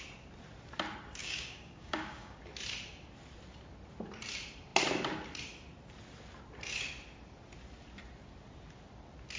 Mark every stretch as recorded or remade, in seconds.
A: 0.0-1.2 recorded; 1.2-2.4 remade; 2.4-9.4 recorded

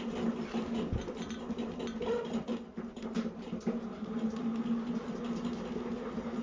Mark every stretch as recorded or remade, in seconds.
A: 0.0-2.7 recorded; 2.7-4.4 remade; 4.4-6.4 recorded

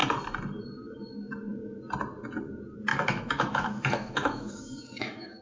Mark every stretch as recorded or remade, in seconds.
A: 0.0-2.9 recorded; 2.9-5.4 remade

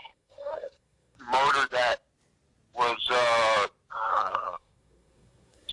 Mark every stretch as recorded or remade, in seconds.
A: 0.0-1.2 remade; 1.2-4.1 recorded; 4.1-5.7 remade

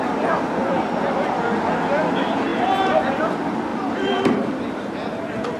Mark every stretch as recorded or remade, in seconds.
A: 0.0-2.5 recorded; 2.5-3.2 remade; 3.2-3.7 recorded; 3.7-5.6 remade

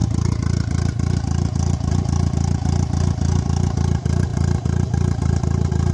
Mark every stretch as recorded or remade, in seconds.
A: 0.0-5.9 recorded

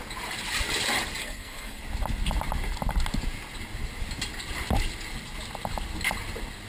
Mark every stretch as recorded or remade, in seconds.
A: 0.0-1.2 recorded; 1.2-1.8 remade; 1.8-6.7 recorded